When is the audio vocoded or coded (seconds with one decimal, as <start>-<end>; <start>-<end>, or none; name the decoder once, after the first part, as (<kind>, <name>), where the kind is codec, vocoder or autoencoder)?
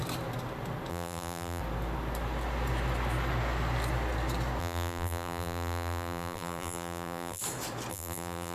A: 0.9-1.6 (vocoder, BigVGAN v2); 4.6-7.4; 7.9-8.5